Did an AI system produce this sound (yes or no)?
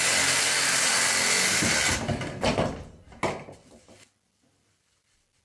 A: no